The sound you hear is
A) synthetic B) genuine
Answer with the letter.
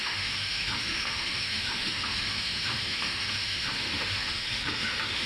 A